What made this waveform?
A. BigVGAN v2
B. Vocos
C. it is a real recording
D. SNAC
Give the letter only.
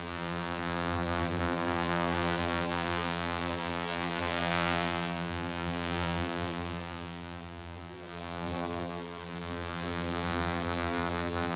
A